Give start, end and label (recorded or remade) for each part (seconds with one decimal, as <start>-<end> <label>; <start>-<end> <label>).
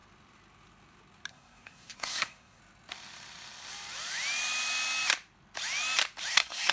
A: 0.0-1.3 recorded; 1.3-2.6 remade; 2.6-6.3 recorded; 6.3-6.7 remade